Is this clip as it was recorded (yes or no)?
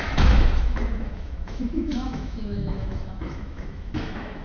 no